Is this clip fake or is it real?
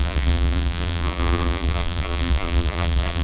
fake